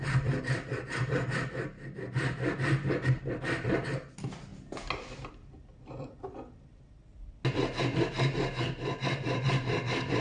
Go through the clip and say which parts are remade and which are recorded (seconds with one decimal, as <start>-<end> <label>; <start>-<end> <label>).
0.0-10.2 recorded